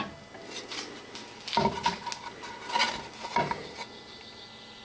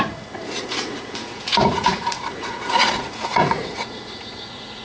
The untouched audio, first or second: first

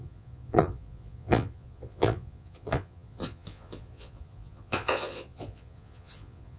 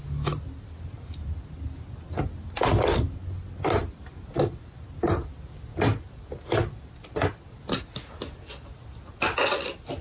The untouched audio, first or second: second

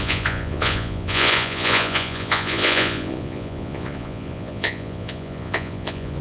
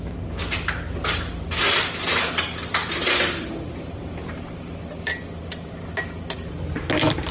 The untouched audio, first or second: second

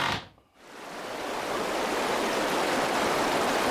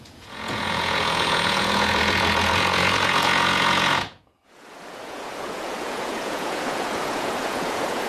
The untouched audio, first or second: first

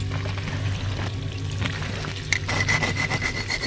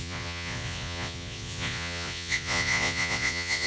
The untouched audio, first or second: first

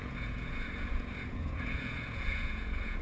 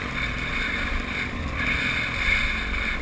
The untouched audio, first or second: second